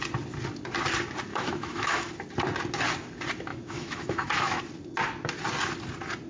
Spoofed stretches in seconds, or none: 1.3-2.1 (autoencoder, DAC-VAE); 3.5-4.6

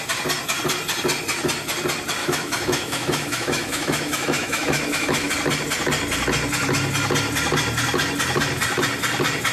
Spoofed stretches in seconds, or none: 2.2-5.3 (autoencoder, DAC-VAE)

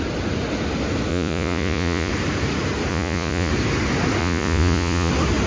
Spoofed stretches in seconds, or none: 1.1-2.1 (vocoder, Vocos); 2.9-3.5; 4.2-5.1